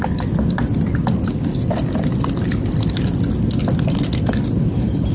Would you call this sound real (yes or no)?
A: yes